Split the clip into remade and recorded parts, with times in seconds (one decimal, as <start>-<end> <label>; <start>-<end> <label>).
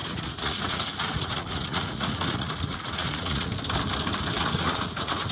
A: 0.0-3.5 remade; 3.5-4.4 recorded; 4.4-5.3 remade